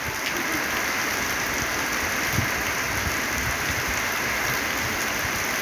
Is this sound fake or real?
real